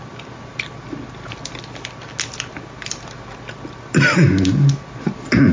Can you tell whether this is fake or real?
real